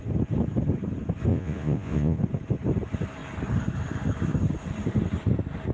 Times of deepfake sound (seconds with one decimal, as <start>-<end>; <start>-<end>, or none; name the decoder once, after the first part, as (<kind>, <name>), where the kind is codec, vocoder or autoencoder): 1.3-2.2 (vocoder, Vocos)